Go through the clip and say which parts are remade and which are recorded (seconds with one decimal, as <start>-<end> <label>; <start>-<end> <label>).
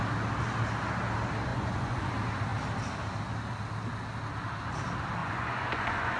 0.0-1.5 recorded; 1.5-2.1 remade; 2.1-5.2 recorded; 5.2-6.2 remade